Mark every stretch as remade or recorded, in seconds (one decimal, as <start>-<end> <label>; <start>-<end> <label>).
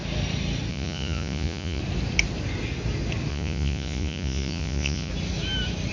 0.0-0.7 recorded; 0.7-1.8 remade; 1.8-3.3 recorded; 3.3-5.1 remade; 5.1-5.9 recorded